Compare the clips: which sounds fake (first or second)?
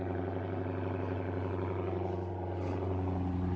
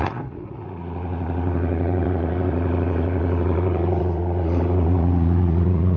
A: second